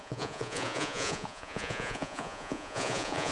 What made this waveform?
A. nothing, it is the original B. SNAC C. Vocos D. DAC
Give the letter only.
C